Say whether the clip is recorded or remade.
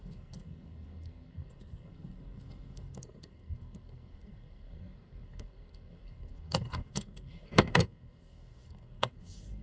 remade